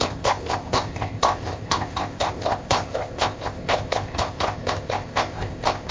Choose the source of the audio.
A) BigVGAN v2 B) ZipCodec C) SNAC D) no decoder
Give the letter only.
B